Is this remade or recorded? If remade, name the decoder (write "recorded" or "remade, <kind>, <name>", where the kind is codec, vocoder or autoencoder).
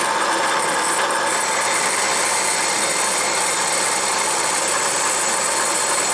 recorded